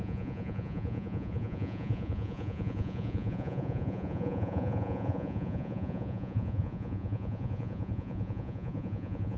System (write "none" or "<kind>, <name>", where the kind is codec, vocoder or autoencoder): vocoder, Vocos